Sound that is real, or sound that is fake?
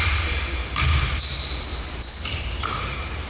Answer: fake